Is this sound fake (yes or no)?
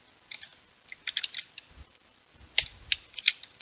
no